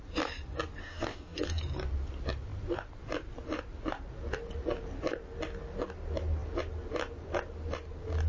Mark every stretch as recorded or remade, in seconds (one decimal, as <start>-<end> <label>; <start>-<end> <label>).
0.0-0.8 recorded; 0.8-1.6 remade; 1.6-8.3 recorded